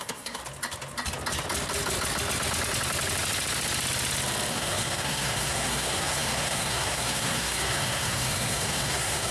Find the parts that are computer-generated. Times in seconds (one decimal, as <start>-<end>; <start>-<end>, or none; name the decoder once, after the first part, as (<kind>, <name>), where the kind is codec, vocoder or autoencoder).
0.0-0.4 (codec, SNAC); 4.5-9.3